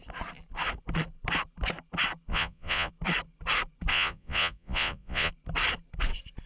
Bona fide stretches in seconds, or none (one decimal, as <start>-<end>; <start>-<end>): 0.0-2.3; 2.9-3.9; 5.3-6.5